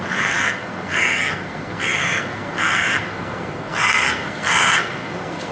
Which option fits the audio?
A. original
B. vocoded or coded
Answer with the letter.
B